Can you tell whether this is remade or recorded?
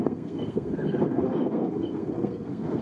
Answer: remade